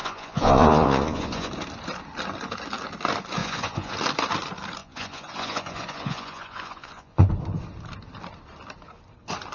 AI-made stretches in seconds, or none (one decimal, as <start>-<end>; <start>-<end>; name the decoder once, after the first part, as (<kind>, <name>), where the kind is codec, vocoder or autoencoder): 0.0-1.5 (vocoder, Vocos); 3.4-3.9; 4.8-7.3